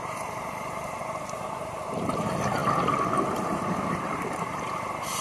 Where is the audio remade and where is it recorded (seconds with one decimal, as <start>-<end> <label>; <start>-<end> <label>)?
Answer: 0.0-2.6 remade; 2.6-3.3 recorded; 3.3-5.2 remade